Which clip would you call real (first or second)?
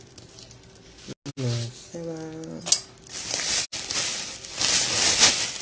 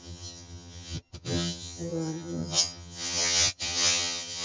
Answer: first